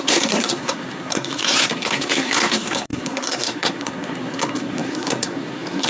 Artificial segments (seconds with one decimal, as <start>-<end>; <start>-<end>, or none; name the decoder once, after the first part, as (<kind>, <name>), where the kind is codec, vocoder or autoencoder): 0.0-5.9 (codec, SNAC)